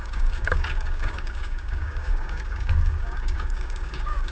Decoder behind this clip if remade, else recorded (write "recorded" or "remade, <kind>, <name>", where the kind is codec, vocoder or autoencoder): remade, codec, DAC